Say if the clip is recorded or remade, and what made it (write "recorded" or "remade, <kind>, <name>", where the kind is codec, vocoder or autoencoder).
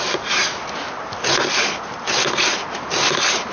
recorded